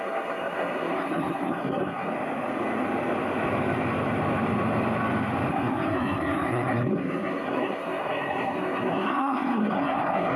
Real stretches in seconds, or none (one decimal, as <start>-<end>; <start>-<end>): 2.1-5.5

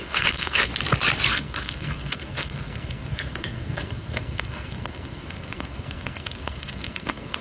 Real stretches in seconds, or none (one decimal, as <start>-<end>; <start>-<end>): 0.7-1.3

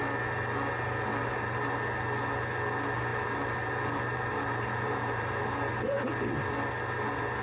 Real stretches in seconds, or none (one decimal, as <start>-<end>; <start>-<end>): 0.0-1.1; 1.6-3.1; 5.7-7.4

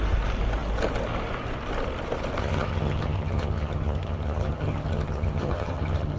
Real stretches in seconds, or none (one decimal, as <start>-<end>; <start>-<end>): 0.0-2.4

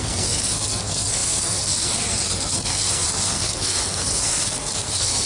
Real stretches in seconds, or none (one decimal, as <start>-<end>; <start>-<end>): none

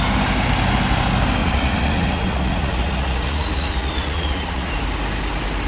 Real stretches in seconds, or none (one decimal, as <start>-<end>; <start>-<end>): 0.0-1.4; 4.7-5.7

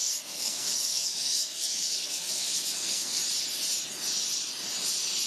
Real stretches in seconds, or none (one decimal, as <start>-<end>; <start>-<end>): 3.2-5.3